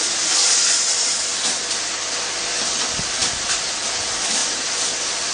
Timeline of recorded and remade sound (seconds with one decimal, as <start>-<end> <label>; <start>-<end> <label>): 0.0-1.3 remade; 1.3-2.7 recorded; 2.7-4.4 remade; 4.4-5.3 recorded